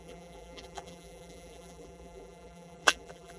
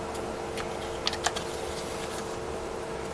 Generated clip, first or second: first